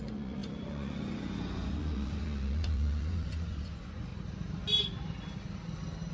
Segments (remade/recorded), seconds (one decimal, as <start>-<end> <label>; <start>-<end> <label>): 0.0-4.1 remade; 4.1-6.1 recorded